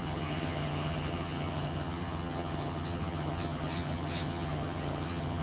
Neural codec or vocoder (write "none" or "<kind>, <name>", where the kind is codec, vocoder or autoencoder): vocoder, HiFi-GAN